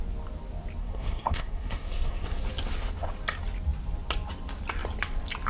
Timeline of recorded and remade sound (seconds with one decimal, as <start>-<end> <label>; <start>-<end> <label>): 0.0-0.8 recorded; 0.8-2.4 remade; 2.4-5.5 recorded